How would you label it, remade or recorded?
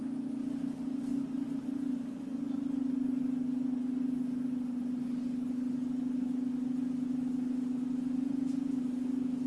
recorded